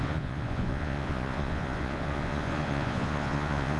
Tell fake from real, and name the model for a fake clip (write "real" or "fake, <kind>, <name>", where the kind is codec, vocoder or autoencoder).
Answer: fake, vocoder, Vocos